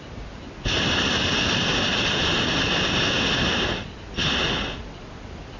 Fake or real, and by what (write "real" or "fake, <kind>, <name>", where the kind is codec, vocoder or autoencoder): real